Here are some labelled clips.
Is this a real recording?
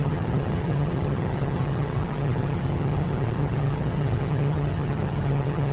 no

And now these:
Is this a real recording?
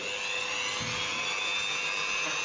yes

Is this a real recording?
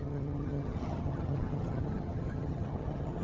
no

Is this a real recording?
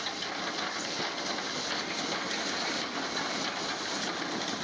yes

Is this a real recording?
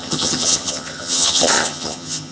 no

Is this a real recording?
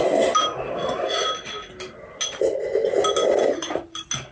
yes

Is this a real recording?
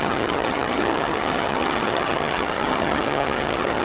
no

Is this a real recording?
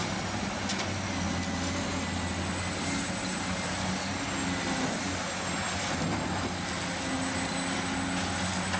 yes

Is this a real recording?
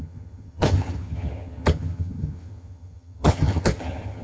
no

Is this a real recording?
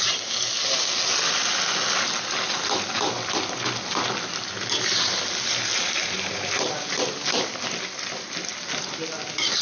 yes